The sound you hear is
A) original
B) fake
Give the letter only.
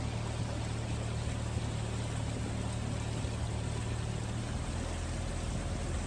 A